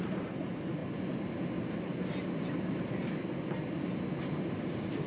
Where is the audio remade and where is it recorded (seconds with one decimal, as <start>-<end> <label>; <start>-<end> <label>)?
0.0-5.1 recorded